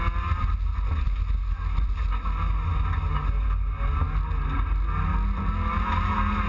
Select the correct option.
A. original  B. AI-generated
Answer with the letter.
A